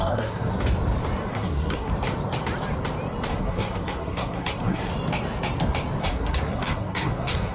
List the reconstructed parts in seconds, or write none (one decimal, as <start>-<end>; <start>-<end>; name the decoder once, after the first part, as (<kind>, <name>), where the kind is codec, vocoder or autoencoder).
0.0-0.5 (codec, SNAC); 1.3-1.9; 3.3-4.9; 6.0-7.5